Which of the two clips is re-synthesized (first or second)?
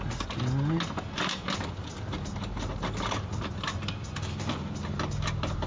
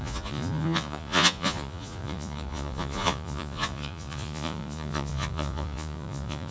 second